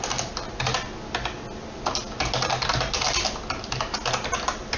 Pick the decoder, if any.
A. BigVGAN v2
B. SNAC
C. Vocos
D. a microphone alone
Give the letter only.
D